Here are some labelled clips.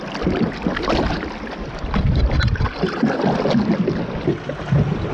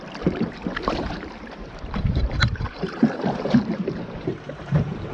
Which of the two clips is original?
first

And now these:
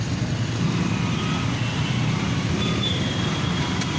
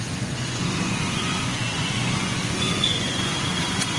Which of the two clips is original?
first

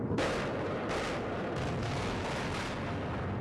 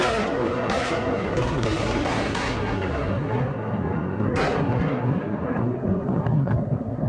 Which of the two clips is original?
first